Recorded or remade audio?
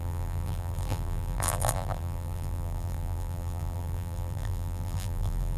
remade